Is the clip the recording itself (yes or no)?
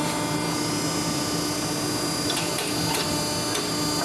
yes